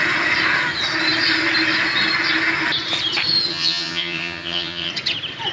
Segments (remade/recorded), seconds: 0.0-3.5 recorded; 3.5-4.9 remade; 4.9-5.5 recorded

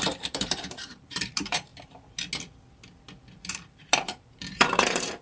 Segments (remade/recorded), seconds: 0.0-1.7 remade; 1.7-3.5 recorded; 3.5-5.2 remade

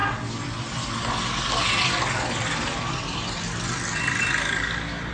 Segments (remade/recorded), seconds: 0.0-5.1 recorded

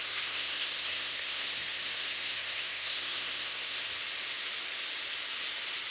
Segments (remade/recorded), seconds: 0.0-3.8 remade; 3.8-5.9 recorded

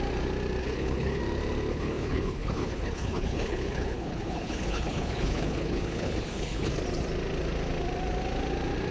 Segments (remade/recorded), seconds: 0.0-0.6 recorded; 0.6-1.2 remade; 1.2-1.7 recorded; 1.7-6.7 remade; 6.7-8.9 recorded